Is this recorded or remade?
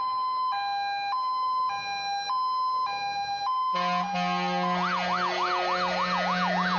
recorded